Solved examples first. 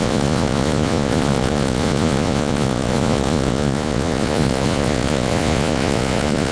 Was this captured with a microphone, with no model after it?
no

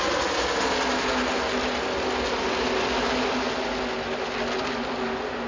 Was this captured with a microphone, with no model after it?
yes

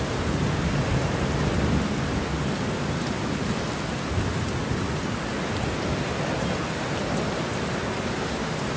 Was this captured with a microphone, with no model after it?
yes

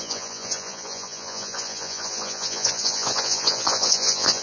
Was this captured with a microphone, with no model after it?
no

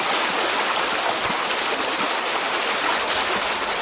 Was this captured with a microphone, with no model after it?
yes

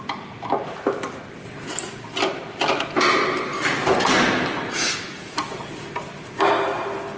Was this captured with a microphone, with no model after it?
yes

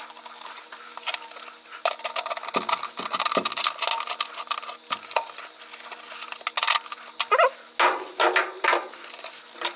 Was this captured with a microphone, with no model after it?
yes